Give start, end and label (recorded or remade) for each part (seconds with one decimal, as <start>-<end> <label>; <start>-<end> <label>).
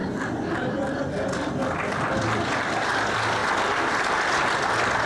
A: 0.0-5.1 recorded